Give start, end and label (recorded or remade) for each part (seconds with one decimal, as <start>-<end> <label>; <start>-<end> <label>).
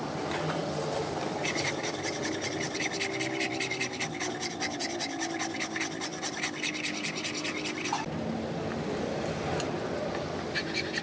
0.0-0.6 recorded; 0.6-4.8 remade; 4.8-6.1 recorded; 6.1-9.3 remade; 9.3-11.0 recorded